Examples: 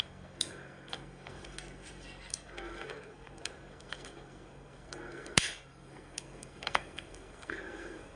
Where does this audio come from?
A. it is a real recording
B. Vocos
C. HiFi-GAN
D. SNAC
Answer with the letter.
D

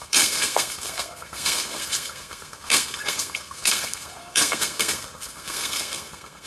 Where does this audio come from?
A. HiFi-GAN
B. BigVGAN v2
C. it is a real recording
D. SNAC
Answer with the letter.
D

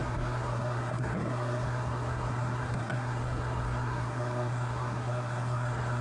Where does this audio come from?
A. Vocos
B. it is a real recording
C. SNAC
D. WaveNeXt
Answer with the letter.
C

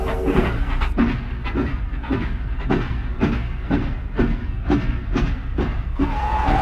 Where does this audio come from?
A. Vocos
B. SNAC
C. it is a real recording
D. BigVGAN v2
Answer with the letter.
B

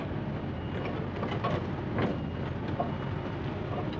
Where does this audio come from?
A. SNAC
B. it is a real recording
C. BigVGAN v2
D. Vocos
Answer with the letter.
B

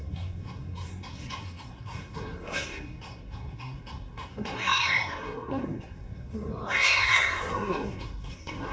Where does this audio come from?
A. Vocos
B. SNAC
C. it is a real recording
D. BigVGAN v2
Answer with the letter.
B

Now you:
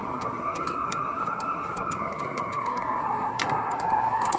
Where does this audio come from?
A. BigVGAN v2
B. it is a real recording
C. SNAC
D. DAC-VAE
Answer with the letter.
C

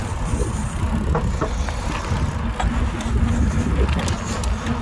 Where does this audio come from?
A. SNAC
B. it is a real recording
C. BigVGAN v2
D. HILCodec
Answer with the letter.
B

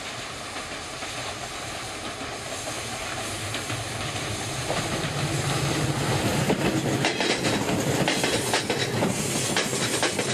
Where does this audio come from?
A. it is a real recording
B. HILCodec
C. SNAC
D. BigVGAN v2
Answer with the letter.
A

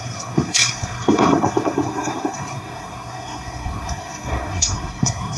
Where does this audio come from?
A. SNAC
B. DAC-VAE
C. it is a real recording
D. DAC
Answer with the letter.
A